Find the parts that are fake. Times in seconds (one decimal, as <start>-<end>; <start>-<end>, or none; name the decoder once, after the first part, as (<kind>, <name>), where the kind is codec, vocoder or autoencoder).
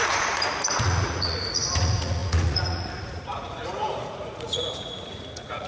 0.0-5.7 (vocoder, Vocos)